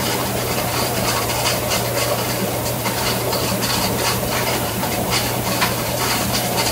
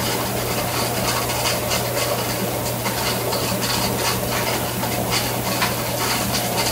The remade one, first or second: first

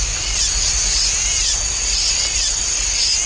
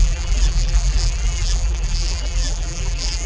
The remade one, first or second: second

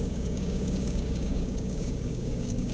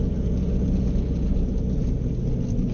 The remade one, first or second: first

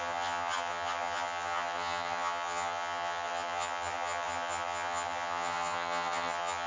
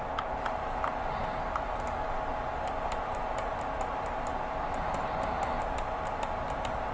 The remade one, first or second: first